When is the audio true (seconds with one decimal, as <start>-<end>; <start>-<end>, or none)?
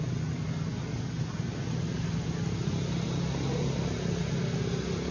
0.0-5.1